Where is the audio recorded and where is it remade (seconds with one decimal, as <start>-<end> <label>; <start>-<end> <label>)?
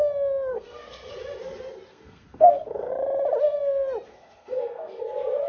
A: 0.0-0.5 recorded; 0.5-1.1 remade; 1.1-1.9 recorded; 1.9-2.9 remade; 2.9-4.1 recorded; 4.1-5.0 remade; 5.0-5.5 recorded